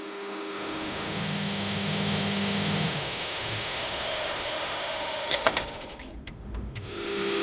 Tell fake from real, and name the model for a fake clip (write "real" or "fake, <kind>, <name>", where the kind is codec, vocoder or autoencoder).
fake, autoencoder, DAC-VAE